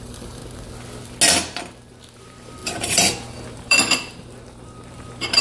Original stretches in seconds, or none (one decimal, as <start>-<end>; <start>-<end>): 0.4-2.2